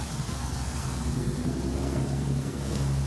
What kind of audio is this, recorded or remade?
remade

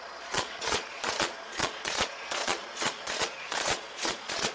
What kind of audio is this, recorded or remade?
remade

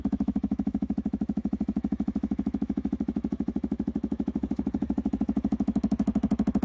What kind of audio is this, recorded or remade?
remade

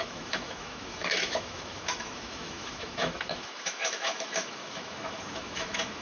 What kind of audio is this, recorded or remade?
remade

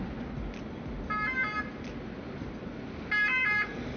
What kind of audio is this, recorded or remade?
recorded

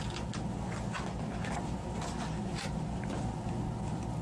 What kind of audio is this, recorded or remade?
recorded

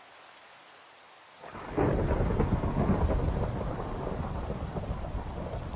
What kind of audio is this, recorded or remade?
recorded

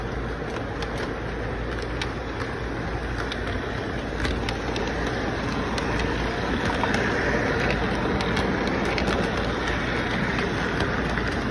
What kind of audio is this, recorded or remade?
recorded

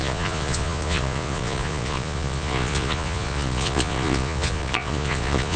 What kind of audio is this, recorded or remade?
remade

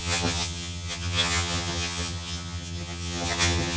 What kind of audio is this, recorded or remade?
remade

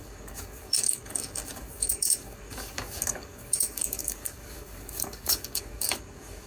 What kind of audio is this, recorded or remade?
remade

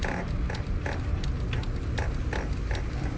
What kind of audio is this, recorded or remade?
recorded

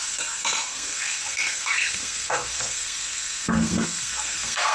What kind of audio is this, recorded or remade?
remade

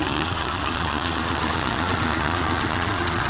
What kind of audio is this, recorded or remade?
remade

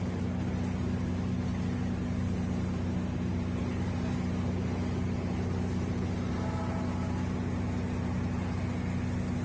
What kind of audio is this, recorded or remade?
recorded